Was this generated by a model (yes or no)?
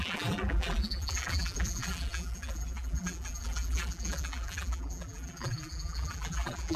yes